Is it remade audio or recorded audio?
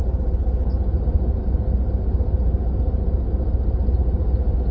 recorded